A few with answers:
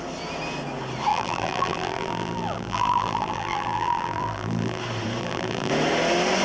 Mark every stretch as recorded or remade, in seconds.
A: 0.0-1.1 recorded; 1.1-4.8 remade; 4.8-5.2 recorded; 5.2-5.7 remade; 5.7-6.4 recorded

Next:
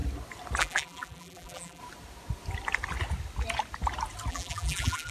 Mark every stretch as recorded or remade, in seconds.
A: 0.0-0.6 recorded; 0.6-1.8 remade; 1.8-4.3 recorded; 4.3-5.1 remade

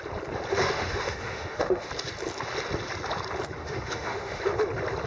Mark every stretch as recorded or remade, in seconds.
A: 0.0-0.5 recorded; 0.5-1.9 remade; 1.9-3.6 recorded; 3.6-4.4 remade; 4.4-5.1 recorded

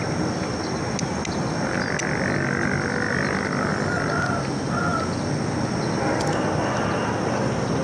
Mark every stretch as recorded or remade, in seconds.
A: 0.0-7.8 recorded

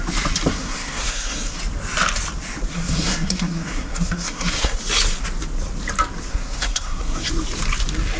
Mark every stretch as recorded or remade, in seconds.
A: 0.0-0.5 recorded; 0.5-1.6 remade; 1.6-2.7 recorded; 2.7-4.8 remade; 4.8-6.3 recorded; 6.3-7.3 remade; 7.3-8.2 recorded

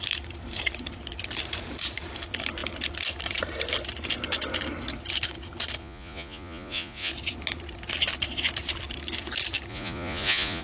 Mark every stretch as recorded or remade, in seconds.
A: 0.0-5.8 recorded; 5.8-7.1 remade; 7.1-9.7 recorded; 9.7-10.6 remade

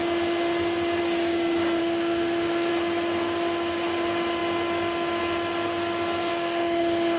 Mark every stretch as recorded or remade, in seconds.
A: 0.0-1.8 recorded; 1.8-2.7 remade; 2.7-6.3 recorded; 6.3-7.2 remade

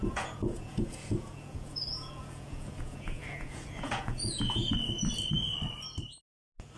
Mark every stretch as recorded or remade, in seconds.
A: 0.0-4.6 remade; 4.6-6.8 recorded